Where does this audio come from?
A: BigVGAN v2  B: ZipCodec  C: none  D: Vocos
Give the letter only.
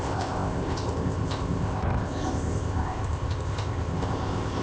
B